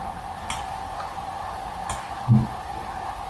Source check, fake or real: real